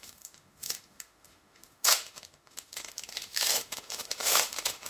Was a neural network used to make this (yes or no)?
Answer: yes